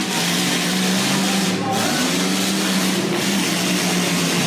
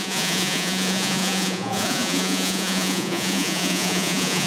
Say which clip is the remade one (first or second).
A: second